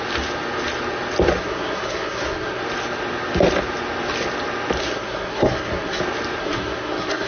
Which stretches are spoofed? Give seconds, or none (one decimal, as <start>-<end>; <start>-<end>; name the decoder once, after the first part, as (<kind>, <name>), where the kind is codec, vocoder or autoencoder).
1.4-2.6 (codec, SNAC); 4.8-6.0; 6.4-7.3